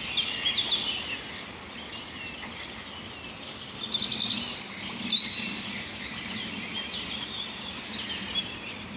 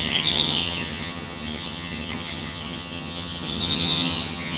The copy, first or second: second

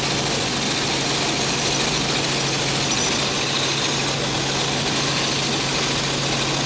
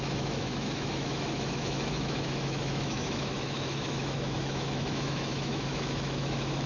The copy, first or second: second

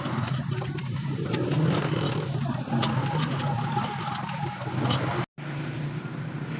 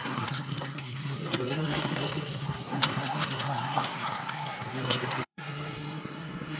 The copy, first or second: second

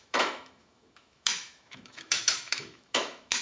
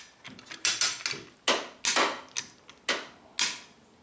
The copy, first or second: first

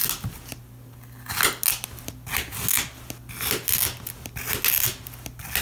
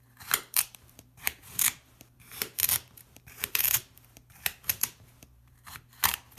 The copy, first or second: second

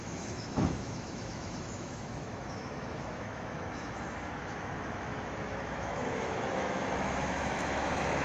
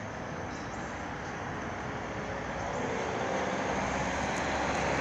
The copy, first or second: first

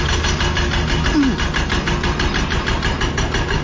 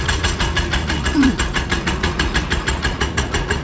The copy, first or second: second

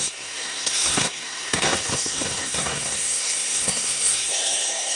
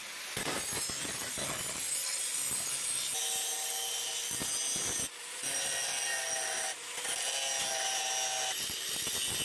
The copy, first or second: first